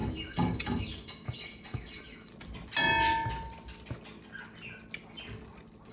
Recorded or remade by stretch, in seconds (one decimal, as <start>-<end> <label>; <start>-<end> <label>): 0.0-2.3 remade; 2.3-5.9 recorded